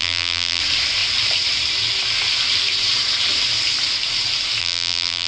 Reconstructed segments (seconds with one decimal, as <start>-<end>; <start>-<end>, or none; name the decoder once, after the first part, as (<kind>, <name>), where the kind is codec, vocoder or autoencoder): 0.0-0.6 (vocoder, BigVGAN v2); 4.6-5.3